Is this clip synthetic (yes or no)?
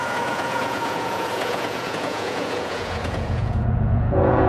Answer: yes